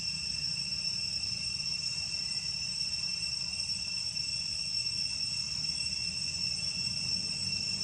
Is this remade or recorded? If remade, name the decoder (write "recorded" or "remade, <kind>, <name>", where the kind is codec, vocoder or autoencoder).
recorded